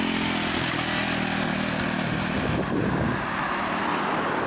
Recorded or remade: recorded